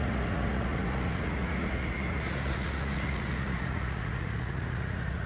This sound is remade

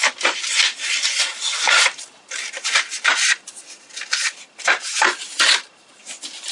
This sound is recorded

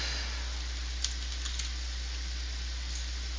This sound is recorded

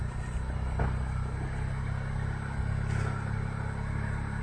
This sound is recorded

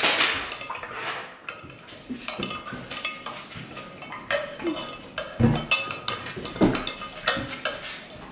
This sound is recorded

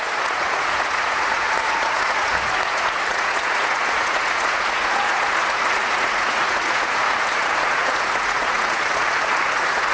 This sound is remade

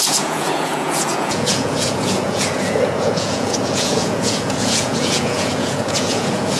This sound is remade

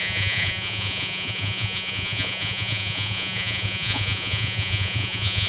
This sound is remade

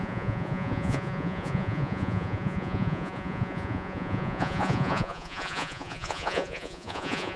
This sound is remade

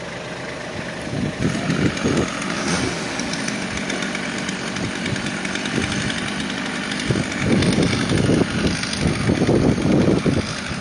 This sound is recorded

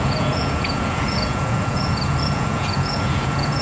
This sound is remade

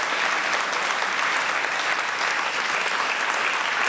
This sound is recorded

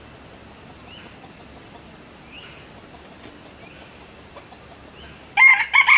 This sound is recorded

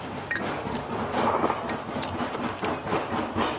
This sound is recorded